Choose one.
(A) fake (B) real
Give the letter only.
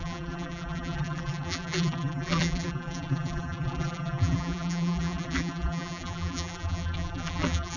A